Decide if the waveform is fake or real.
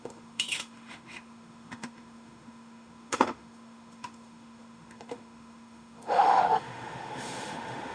fake